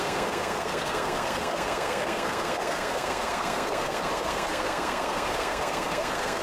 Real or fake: fake